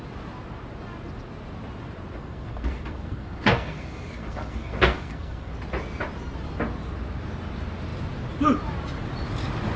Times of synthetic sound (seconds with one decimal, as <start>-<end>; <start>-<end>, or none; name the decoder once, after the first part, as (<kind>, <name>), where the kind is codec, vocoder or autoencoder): 2.2-5.5 (codec, SNAC)